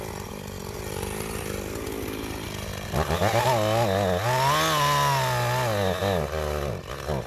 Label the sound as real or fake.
real